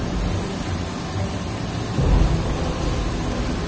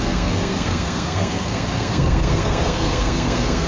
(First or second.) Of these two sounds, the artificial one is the second